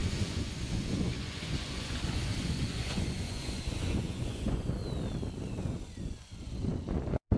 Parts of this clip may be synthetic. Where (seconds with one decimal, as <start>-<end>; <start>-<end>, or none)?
0.0-4.8; 5.4-7.4